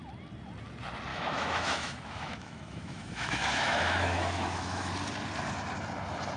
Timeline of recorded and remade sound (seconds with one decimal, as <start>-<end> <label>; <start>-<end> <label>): 0.0-1.1 recorded; 1.1-4.9 remade; 4.9-6.4 recorded